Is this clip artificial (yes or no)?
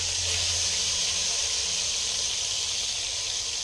no